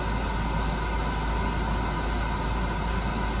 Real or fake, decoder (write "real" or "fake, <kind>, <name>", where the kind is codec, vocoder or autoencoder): real